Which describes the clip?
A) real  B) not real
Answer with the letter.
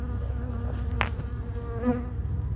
A